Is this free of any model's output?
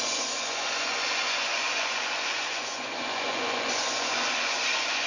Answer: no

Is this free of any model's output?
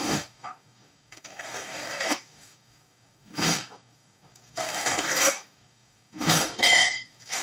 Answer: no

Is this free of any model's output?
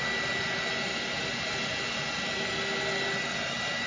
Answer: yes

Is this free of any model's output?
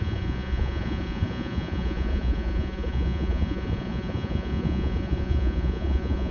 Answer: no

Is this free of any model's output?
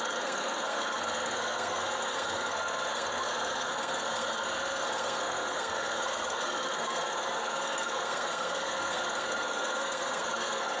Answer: no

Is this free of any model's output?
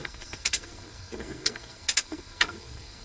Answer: no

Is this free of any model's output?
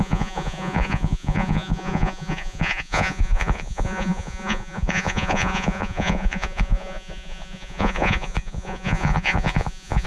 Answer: no